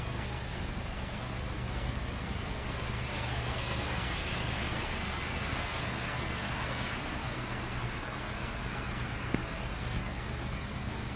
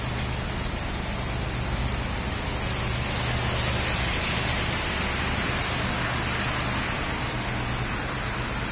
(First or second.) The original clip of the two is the second